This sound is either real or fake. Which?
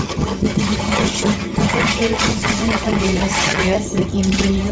fake